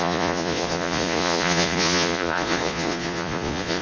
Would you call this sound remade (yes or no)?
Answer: yes